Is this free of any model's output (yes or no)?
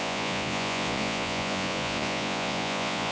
no